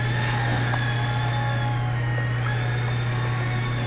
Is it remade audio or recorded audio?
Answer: recorded